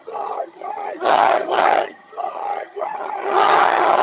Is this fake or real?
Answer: fake